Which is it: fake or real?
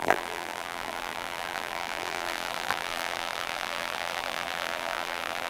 fake